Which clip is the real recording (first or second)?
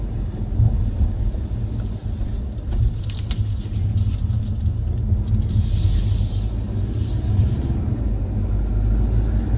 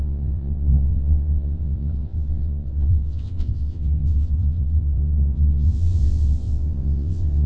first